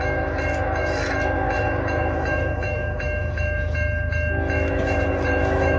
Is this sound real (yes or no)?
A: no